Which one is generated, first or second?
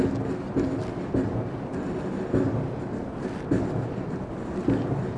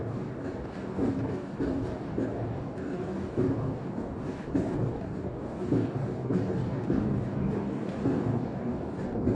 second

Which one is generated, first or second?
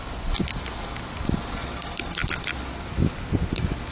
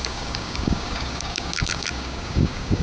second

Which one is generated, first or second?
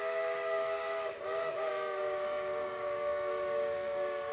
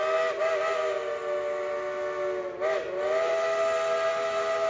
first